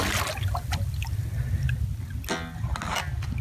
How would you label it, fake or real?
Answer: real